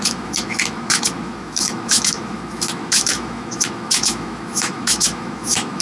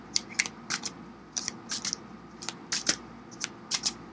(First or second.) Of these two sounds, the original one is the second